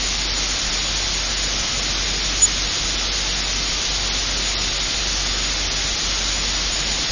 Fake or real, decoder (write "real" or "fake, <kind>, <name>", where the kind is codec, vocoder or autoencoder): real